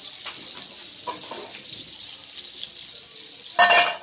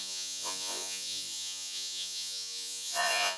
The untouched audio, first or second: first